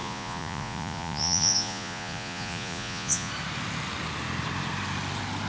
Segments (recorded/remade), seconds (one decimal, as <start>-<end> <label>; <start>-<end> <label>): 0.0-3.3 remade; 3.3-5.5 recorded